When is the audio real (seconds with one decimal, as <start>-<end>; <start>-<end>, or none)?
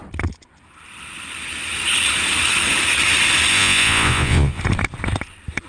0.0-3.5; 4.6-5.7